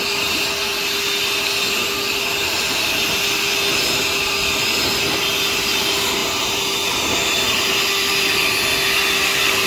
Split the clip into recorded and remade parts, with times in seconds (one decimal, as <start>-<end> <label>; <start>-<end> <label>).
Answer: 0.0-9.7 recorded